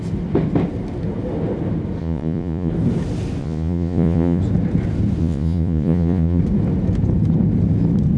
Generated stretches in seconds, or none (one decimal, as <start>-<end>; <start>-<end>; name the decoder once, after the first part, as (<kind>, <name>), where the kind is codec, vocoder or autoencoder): 2.0-2.7 (vocoder, Vocos); 3.4-4.4; 5.2-6.4

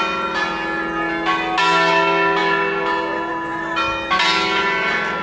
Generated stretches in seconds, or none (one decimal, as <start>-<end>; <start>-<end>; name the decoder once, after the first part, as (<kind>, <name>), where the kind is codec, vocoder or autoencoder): none

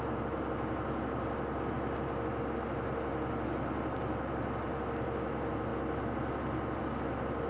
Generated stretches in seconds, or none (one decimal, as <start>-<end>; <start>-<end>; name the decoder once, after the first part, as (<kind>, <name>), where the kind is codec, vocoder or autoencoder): none

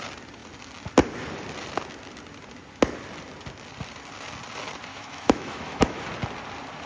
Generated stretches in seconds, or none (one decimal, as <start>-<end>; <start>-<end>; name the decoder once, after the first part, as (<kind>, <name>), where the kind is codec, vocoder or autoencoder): 4.9-6.0 (autoencoder, DAC-VAE)

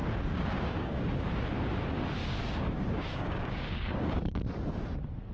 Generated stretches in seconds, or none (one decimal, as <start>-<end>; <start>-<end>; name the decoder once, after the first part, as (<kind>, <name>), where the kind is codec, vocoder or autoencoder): 0.0-1.1 (codec, DAC); 2.2-4.4